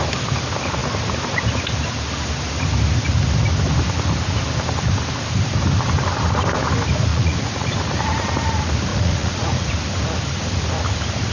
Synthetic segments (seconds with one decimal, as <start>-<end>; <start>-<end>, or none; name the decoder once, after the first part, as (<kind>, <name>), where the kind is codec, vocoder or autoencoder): 7.1-7.7 (vocoder, Vocos); 8.9-9.7